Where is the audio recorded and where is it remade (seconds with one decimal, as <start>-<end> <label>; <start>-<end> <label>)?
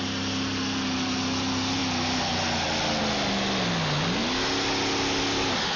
0.0-5.8 recorded